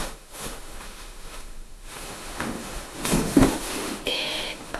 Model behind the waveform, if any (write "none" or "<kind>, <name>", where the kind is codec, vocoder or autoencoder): autoencoder, DAC-VAE